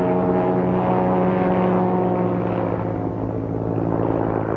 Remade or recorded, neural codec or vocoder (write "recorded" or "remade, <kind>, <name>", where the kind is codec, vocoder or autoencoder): recorded